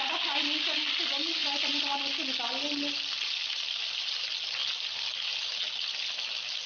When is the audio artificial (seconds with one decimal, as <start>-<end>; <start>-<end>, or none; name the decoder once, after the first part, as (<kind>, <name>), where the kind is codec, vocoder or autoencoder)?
none